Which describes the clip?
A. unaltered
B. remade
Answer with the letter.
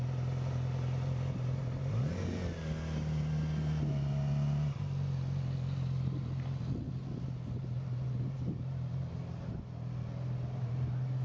A